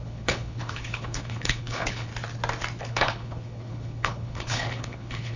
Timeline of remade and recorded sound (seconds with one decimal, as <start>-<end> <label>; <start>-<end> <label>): 0.0-2.1 remade; 2.1-2.8 recorded; 2.8-5.4 remade

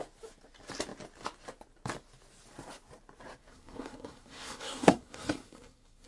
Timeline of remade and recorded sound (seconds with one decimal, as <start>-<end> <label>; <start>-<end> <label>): 0.0-3.4 recorded; 3.4-6.1 remade

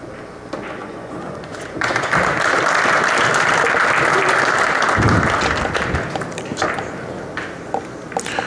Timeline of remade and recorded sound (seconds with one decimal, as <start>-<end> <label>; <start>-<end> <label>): 0.0-0.8 recorded; 0.8-2.1 remade; 2.1-8.5 recorded

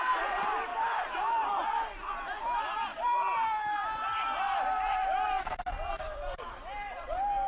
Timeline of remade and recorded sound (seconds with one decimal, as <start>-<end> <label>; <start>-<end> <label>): 0.0-0.7 recorded; 0.7-1.5 remade; 1.5-2.9 recorded; 2.9-6.7 remade; 6.7-7.5 recorded

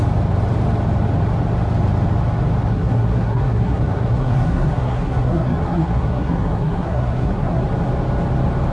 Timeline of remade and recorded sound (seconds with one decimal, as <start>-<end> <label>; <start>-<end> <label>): 0.0-2.7 recorded; 2.7-7.6 remade; 7.6-8.7 recorded

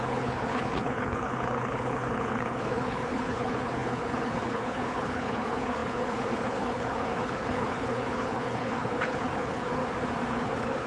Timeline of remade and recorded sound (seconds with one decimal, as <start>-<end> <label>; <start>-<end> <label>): 0.0-9.8 remade; 9.8-10.3 recorded; 10.3-10.9 remade

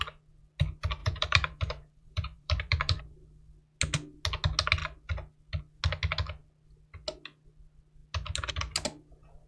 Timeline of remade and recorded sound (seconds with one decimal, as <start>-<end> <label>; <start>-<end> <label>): 0.0-1.0 recorded; 1.0-3.0 remade; 3.0-9.5 recorded